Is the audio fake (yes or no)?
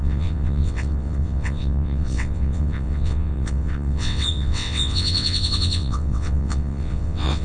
yes